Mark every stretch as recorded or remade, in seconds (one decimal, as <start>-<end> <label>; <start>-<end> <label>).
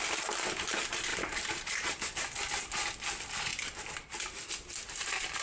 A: 0.0-5.4 recorded